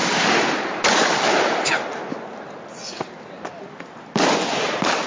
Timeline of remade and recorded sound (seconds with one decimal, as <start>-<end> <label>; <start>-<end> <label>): 0.0-0.6 remade; 0.6-5.1 recorded